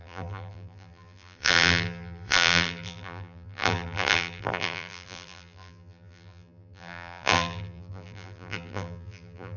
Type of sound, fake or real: fake